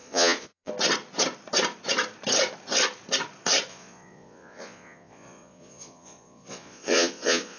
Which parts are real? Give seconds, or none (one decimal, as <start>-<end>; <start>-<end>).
0.7-3.7